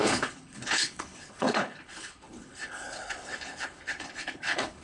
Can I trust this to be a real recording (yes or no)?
no